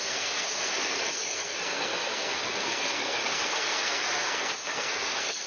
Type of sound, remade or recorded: remade